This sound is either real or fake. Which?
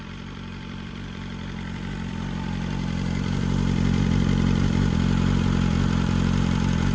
fake